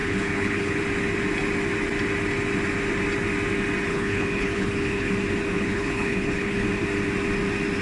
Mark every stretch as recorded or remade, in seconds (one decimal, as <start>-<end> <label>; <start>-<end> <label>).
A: 0.0-0.8 remade; 0.8-3.9 recorded; 3.9-5.1 remade; 5.1-5.5 recorded; 5.5-6.7 remade; 6.7-7.8 recorded

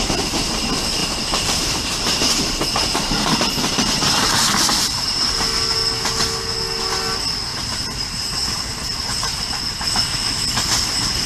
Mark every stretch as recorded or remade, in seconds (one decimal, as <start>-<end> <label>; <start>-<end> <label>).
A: 0.0-1.0 recorded; 1.0-5.3 remade; 5.3-7.5 recorded; 7.5-9.6 remade; 9.6-11.3 recorded